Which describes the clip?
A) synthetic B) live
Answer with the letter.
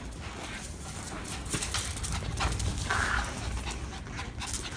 B